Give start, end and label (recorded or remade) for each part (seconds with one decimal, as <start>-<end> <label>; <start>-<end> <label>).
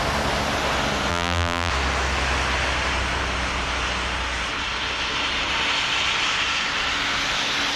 0.0-1.1 recorded; 1.1-1.7 remade; 1.7-7.8 recorded